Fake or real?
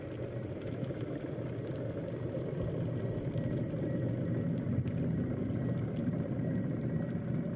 real